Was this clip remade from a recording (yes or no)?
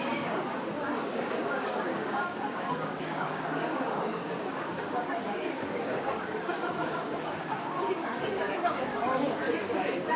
yes